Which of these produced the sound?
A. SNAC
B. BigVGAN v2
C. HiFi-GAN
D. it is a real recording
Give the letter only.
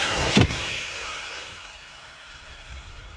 A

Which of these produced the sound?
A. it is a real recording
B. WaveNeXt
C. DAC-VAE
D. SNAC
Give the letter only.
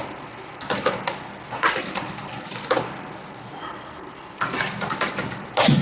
A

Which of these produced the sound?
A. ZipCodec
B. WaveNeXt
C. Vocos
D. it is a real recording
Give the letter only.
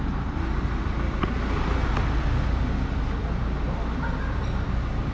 D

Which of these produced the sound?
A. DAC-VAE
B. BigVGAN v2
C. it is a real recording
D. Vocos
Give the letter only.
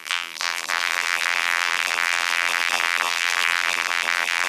B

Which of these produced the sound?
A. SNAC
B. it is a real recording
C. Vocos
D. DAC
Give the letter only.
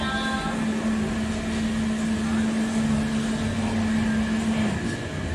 B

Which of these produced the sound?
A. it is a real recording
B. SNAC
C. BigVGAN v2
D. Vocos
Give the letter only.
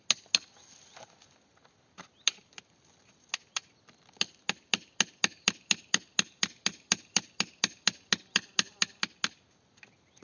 A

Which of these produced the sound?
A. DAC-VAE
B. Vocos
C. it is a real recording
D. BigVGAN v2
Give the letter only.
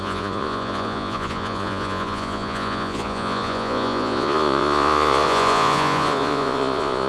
B